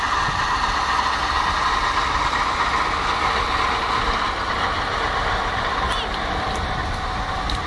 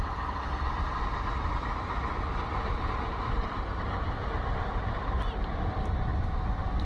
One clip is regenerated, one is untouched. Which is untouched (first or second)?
first